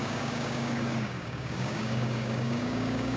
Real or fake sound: fake